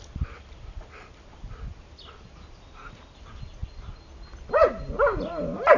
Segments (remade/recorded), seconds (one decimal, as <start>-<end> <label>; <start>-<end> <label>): 0.0-5.8 recorded